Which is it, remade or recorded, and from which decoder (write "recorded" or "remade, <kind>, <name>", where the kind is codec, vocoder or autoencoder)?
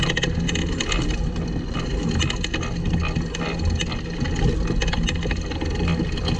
recorded